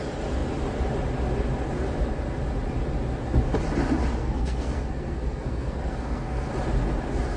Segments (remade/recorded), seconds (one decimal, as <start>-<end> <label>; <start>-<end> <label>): 0.0-4.2 recorded; 4.2-6.5 remade; 6.5-7.4 recorded